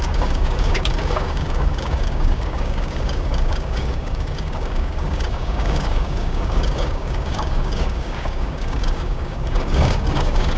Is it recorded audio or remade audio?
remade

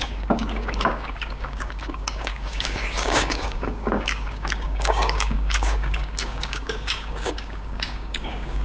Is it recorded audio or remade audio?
remade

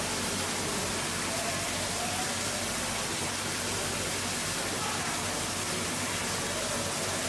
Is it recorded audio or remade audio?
recorded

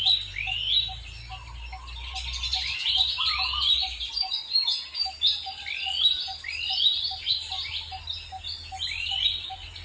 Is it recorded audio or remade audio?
recorded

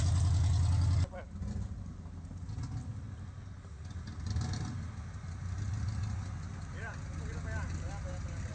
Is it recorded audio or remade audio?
recorded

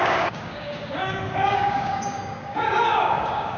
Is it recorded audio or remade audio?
remade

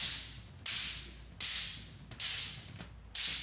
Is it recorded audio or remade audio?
recorded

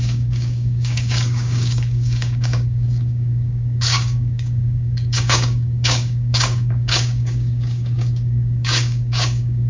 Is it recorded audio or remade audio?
remade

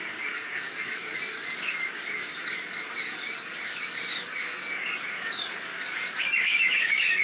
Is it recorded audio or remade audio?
remade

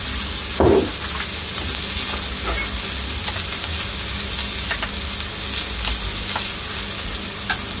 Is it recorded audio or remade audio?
recorded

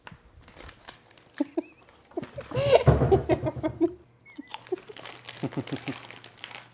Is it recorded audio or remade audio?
recorded